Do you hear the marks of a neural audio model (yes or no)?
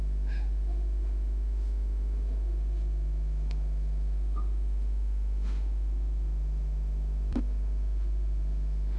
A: yes